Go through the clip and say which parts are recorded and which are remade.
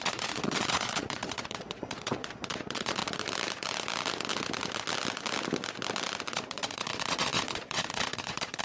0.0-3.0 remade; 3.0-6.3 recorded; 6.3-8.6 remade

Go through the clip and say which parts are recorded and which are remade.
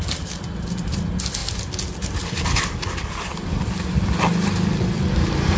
0.0-5.6 recorded